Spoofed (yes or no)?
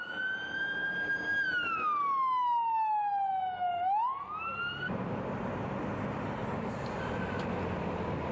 no